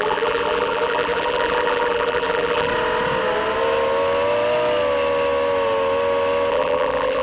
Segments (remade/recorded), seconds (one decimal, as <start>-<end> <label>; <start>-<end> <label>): 0.0-2.7 remade; 2.7-6.5 recorded; 6.5-7.2 remade